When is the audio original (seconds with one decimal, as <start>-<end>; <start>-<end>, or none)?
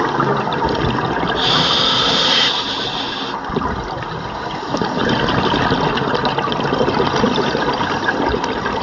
0.0-8.8